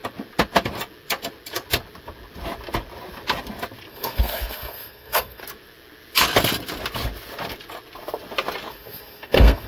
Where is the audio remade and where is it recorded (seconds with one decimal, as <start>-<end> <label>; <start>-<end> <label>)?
0.0-3.9 recorded; 3.9-5.4 remade; 5.4-8.7 recorded; 8.7-9.7 remade